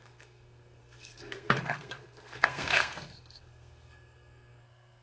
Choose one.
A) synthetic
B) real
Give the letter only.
A